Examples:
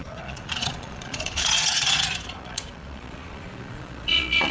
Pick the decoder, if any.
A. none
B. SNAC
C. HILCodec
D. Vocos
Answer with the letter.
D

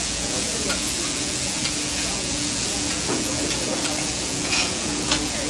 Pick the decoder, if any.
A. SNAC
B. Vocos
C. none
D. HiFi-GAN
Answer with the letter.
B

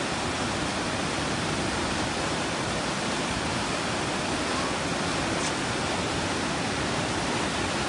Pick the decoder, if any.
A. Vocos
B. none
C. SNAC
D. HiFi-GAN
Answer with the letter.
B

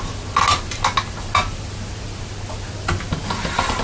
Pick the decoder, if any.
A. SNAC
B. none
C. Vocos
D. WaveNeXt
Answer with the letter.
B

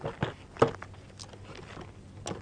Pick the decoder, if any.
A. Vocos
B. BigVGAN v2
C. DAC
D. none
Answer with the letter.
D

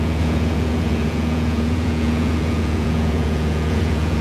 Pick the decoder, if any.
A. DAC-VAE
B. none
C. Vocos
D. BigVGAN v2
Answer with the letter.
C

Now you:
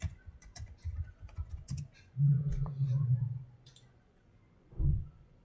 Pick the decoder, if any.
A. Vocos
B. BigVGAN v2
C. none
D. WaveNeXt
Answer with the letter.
A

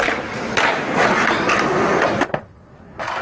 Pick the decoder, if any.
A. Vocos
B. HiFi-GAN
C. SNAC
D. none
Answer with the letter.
D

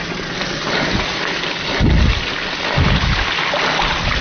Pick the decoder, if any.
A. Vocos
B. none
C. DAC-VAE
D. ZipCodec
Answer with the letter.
B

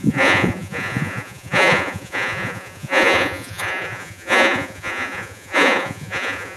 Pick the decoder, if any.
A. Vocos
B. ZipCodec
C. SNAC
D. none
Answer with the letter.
A